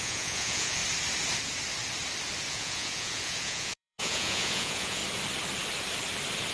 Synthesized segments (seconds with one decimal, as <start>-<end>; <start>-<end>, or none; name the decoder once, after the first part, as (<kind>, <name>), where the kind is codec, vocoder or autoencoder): 0.0-0.8 (vocoder, Vocos); 2.5-5.0